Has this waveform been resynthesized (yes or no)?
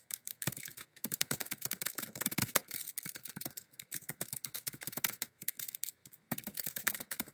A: yes